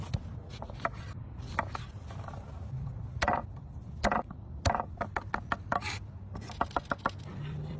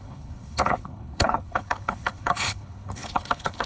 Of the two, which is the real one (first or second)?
first